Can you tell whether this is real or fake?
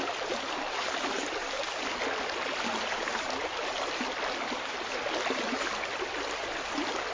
real